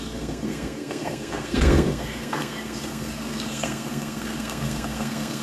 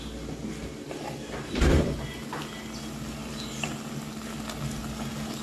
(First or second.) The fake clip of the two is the first